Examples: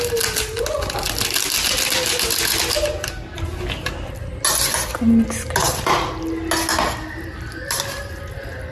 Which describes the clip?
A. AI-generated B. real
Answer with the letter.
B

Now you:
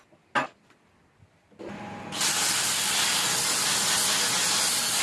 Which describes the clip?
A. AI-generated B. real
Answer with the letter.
B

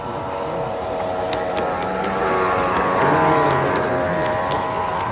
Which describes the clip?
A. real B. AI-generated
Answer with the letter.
A